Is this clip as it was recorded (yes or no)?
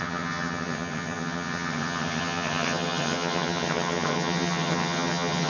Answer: no